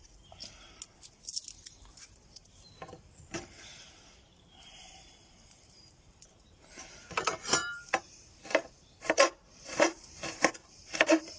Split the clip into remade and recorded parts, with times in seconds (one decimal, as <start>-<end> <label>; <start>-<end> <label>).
0.0-0.4 remade; 0.4-1.9 recorded; 1.9-11.4 remade